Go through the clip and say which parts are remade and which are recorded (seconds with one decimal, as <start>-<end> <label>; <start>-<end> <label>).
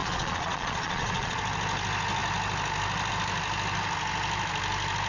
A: 0.0-1.4 remade; 1.4-5.1 recorded